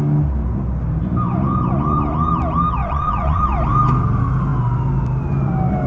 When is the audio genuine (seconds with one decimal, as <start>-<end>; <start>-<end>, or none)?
0.0-2.8; 3.4-5.9